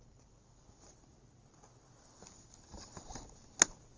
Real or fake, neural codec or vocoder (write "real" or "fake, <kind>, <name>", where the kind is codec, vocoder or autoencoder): real